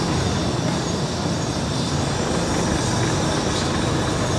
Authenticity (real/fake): real